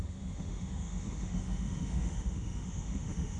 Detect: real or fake fake